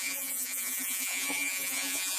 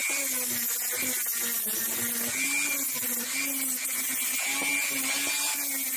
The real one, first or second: second